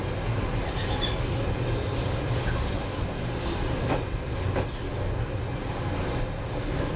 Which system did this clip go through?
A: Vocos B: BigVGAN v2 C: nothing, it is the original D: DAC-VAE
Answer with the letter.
C